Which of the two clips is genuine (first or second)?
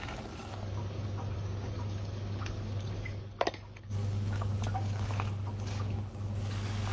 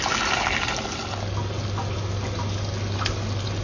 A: second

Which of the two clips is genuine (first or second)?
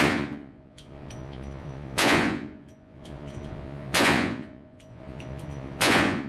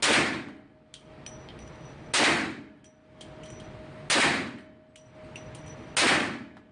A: second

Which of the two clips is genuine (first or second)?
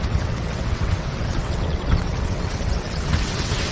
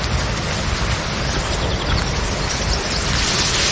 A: second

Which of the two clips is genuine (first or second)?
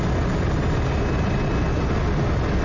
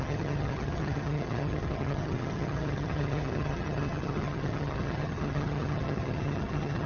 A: first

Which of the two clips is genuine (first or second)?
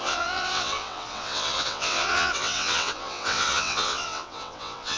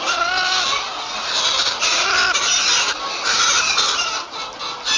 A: second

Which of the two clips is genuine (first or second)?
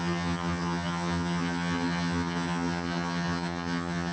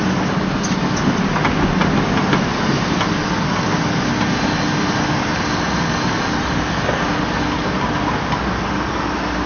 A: second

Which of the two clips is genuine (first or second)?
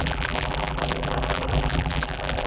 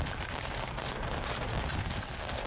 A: second